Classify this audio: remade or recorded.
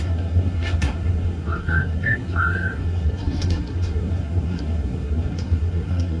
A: remade